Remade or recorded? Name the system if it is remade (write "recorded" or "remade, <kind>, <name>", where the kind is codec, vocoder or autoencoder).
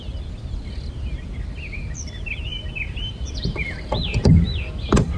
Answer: remade, vocoder, BigVGAN v2